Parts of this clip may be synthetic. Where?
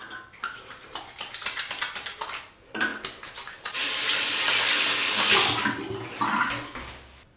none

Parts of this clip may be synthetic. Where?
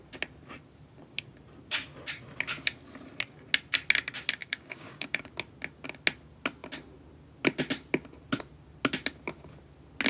4.4-5.3 (codec, DAC)